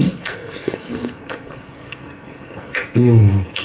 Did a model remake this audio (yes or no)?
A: yes